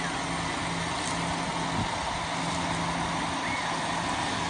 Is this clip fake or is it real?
real